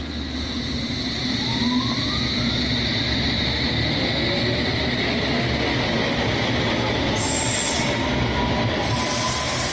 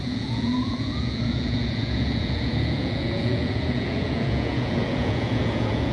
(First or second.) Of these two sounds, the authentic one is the first